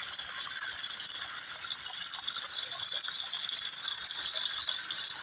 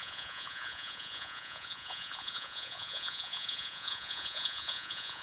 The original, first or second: first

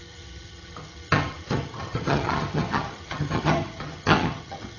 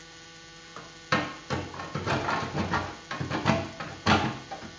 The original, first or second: second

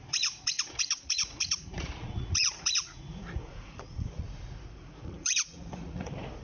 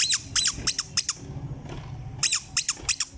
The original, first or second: second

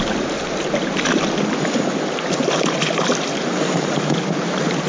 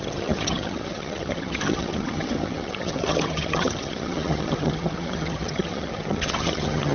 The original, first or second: first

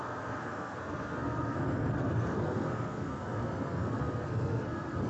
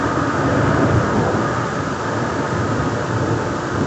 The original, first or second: second